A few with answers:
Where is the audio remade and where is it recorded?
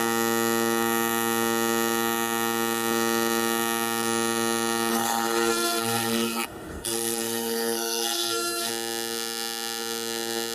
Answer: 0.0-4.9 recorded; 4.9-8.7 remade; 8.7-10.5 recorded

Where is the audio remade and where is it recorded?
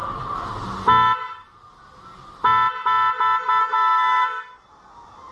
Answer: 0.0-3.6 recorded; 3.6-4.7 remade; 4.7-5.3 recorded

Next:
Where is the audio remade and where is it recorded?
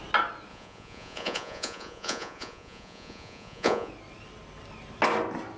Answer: 0.0-0.5 recorded; 0.5-3.9 remade; 3.9-5.6 recorded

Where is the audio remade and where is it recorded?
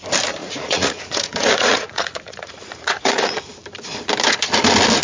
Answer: 0.0-0.4 recorded; 0.4-3.4 remade; 3.4-5.0 recorded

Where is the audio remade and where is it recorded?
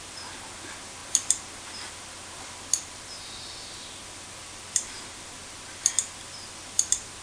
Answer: 0.0-7.2 recorded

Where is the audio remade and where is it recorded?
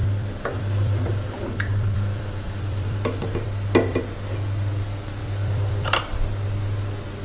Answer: 0.0-4.0 remade; 4.0-5.2 recorded; 5.2-6.0 remade; 6.0-7.2 recorded